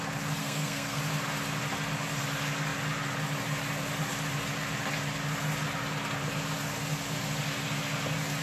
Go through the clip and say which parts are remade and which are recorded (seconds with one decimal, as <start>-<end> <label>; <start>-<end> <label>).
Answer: 0.0-0.4 recorded; 0.4-1.0 remade; 1.0-8.4 recorded